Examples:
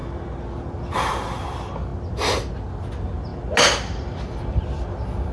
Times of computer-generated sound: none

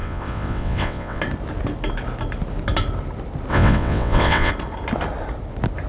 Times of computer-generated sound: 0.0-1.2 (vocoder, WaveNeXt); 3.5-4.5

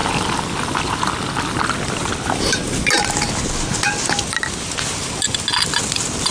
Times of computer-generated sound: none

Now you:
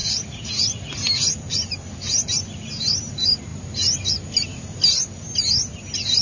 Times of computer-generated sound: none

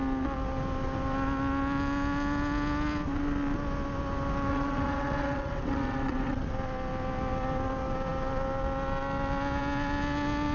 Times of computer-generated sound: 4.5-6.5 (vocoder, WaveNeXt)

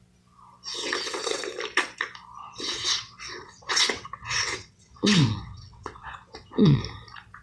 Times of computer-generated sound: 0.7-1.5 (vocoder, WaveNeXt); 2.4-6.8

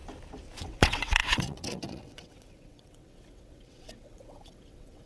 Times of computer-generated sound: 0.6-5.1 (vocoder, WaveNeXt)